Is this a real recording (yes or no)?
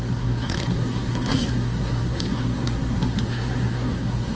no